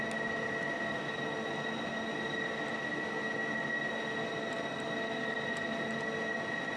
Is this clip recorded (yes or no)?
yes